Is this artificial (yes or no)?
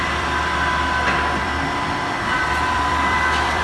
yes